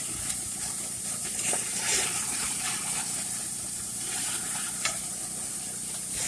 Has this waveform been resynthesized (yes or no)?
yes